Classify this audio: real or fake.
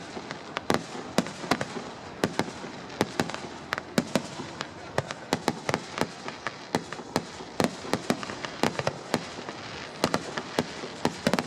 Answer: real